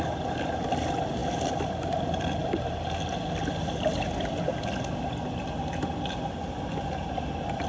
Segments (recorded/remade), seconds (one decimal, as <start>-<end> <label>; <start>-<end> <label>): 0.0-7.7 recorded